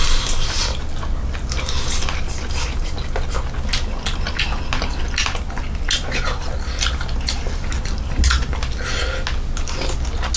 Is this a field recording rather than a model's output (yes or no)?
yes